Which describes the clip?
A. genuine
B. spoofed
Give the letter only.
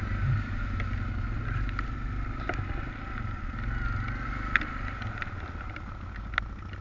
A